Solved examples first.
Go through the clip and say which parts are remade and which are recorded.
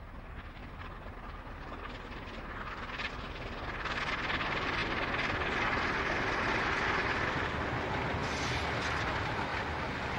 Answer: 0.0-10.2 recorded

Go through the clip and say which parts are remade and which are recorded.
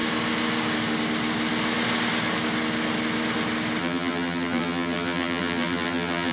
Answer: 0.0-3.8 recorded; 3.8-6.3 remade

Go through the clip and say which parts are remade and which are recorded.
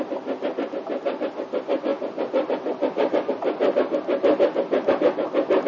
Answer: 0.0-5.7 recorded